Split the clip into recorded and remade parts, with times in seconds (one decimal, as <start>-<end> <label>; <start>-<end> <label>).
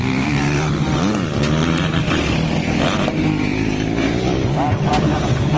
0.0-3.5 recorded; 3.5-5.6 remade